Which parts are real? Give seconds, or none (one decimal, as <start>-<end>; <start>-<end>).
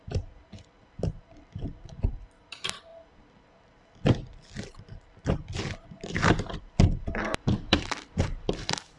2.9-7.1